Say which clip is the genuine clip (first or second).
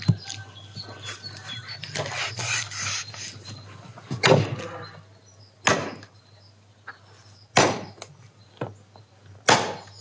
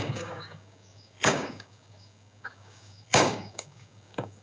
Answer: first